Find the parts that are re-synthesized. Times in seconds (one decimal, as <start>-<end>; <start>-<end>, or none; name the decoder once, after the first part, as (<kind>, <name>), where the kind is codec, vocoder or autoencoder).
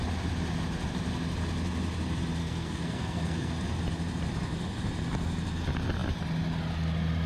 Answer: 2.4-3.5 (codec, SNAC)